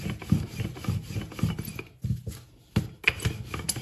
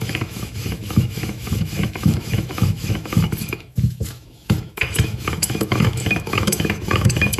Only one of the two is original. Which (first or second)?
first